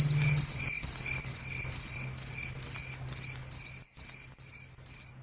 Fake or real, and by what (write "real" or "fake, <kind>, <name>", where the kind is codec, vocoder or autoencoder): real